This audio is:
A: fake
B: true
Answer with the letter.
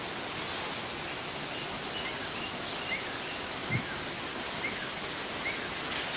B